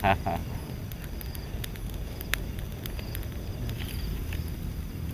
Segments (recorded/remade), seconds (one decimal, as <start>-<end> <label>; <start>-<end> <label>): 0.0-5.1 recorded